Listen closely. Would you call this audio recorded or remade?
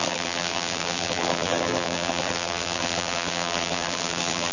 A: remade